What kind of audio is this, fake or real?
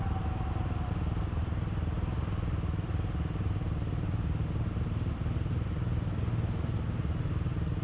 real